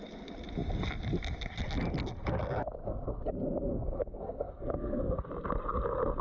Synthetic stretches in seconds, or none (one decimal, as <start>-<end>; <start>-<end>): 2.8-3.3; 3.7-5.3